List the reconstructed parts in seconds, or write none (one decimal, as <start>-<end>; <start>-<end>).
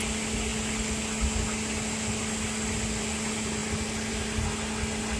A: none